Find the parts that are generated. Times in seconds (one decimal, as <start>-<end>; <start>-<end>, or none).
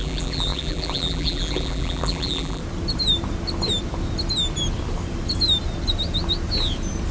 0.0-2.6